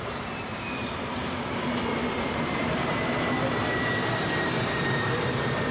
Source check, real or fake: fake